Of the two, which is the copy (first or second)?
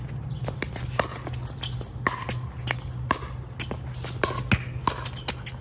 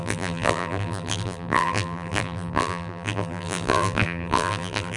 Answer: second